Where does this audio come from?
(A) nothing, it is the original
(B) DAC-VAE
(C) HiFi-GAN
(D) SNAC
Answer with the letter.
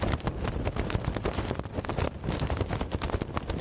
A